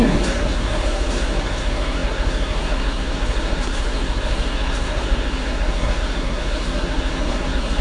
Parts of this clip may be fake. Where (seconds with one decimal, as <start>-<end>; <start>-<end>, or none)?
0.0-7.8